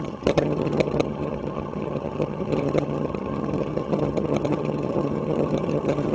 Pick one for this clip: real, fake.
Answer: fake